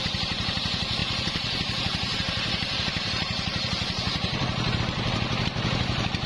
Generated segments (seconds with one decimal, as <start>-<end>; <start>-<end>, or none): 0.0-6.3